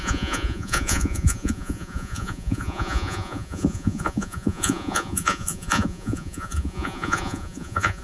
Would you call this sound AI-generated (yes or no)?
yes